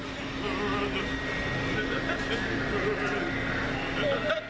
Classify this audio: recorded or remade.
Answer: recorded